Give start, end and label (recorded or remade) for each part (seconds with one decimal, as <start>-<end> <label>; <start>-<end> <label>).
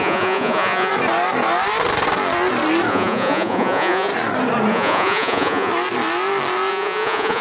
0.0-0.9 remade; 0.9-2.9 recorded; 2.9-4.1 remade; 4.1-4.7 recorded; 4.7-5.7 remade; 5.7-6.7 recorded; 6.7-7.4 remade